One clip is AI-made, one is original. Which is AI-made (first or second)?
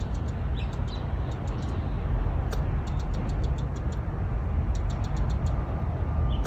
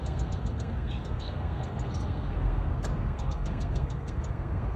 second